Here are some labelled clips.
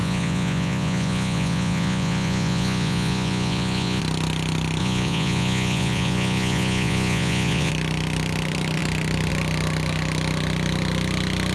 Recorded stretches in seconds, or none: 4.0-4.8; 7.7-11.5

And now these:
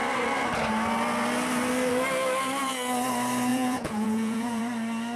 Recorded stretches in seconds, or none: 0.0-3.5; 4.6-5.2

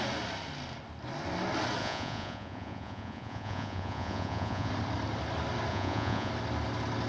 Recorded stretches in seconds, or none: 0.0-1.8; 4.7-5.7; 6.3-7.1

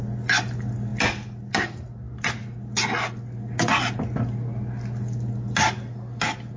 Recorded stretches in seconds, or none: 0.0-6.6

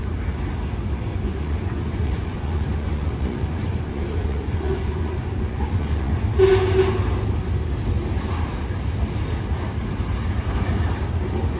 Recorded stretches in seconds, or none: 0.0-1.1; 6.1-11.6

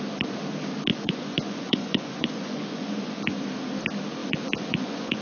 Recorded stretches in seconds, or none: 0.0-0.9; 3.4-4.2

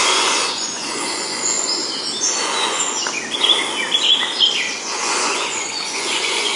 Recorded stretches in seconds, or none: 1.8-2.3; 3.0-4.8

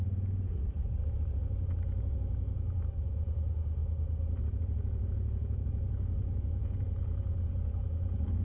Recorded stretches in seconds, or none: 0.8-2.0; 3.8-4.4